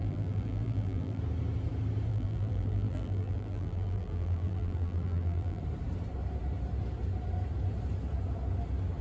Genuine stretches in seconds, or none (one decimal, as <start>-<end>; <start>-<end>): 1.2-2.1; 5.6-9.0